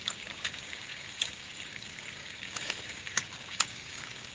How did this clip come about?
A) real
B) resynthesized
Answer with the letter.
B